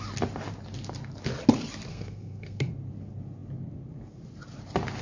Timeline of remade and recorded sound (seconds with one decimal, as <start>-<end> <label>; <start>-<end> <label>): 0.0-1.9 recorded; 1.9-2.7 remade; 2.7-5.0 recorded